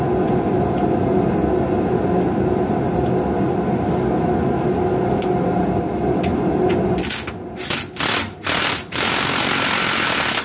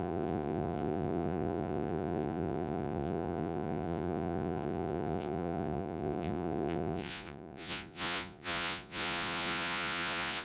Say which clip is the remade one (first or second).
second